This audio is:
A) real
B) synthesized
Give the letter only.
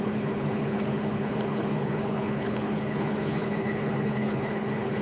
B